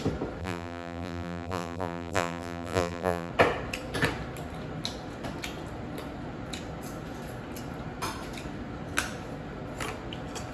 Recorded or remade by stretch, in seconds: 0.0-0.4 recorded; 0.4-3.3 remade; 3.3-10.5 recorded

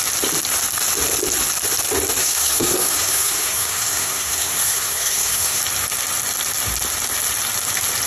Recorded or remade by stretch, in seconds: 0.0-2.2 recorded; 2.2-5.6 remade; 5.6-8.1 recorded

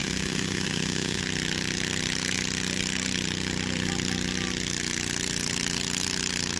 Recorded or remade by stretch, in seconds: 0.0-1.2 remade; 1.2-6.6 recorded

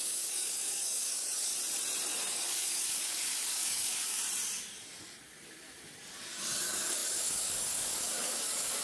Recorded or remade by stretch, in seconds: 0.0-1.5 remade; 1.5-2.3 recorded; 2.3-4.2 remade; 4.2-6.6 recorded; 6.6-8.8 remade

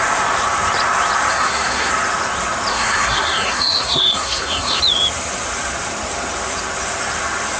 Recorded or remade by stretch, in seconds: 0.0-1.3 recorded; 1.3-1.9 remade; 1.9-2.7 recorded; 2.7-4.8 remade; 4.8-7.6 recorded